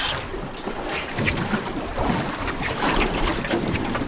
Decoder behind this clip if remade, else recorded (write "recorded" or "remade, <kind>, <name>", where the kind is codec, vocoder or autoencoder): recorded